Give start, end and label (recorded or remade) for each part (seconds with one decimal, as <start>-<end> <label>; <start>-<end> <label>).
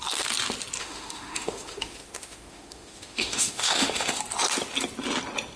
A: 0.0-0.8 recorded; 0.8-4.2 remade; 4.2-5.6 recorded